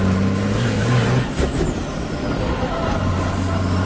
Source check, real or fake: real